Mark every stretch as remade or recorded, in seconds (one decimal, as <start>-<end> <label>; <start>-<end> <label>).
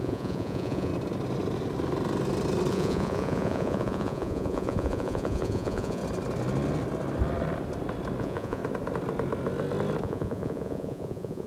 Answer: 0.0-0.9 remade; 0.9-2.7 recorded; 2.7-6.0 remade; 6.0-8.2 recorded; 8.2-8.6 remade; 8.6-10.0 recorded; 10.0-11.5 remade